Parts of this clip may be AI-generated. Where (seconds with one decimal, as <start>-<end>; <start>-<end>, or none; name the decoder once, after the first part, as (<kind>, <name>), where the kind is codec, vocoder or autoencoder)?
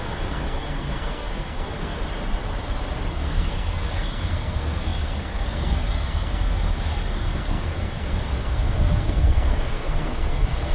0.0-2.0 (codec, SNAC); 3.1-10.7